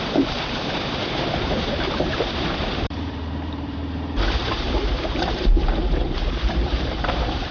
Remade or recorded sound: remade